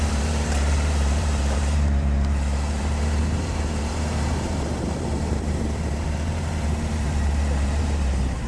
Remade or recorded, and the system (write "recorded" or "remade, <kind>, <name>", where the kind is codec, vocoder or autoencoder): remade, vocoder, BigVGAN v2